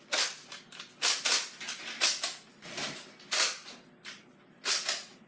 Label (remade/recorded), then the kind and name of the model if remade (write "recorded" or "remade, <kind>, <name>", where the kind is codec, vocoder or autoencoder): recorded